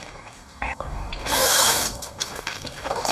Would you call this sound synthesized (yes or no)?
yes